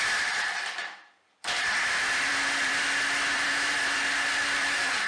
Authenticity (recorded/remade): remade